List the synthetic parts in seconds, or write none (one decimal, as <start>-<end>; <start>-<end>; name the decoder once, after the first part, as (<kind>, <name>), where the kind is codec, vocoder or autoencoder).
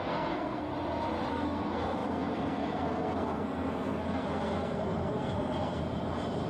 0.0-0.7 (codec, SNAC); 1.3-5.8